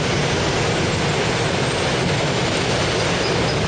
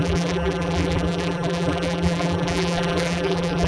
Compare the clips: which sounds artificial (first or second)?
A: second